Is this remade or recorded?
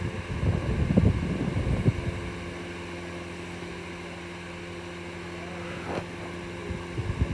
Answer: recorded